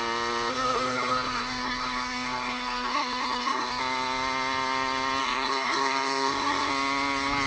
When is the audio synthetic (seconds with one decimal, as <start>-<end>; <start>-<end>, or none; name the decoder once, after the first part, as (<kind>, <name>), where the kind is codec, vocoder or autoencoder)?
0.5-3.8 (codec, SNAC); 5.2-6.7